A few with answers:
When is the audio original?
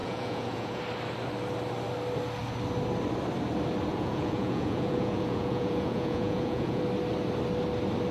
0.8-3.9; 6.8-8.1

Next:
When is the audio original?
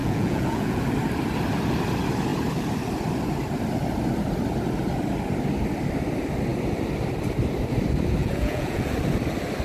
0.8-8.2; 8.9-9.6